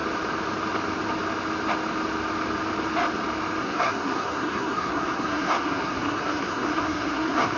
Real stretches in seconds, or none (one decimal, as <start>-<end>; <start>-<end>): 0.0-3.6